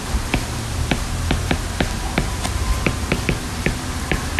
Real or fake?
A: real